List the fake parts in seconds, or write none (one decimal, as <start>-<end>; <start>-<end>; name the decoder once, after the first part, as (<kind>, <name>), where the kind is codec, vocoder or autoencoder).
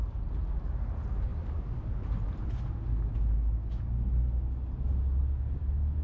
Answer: none